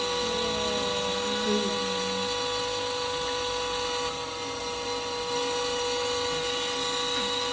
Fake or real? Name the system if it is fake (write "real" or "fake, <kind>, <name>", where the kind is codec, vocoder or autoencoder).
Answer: real